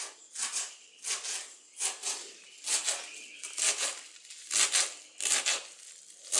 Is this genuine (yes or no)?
yes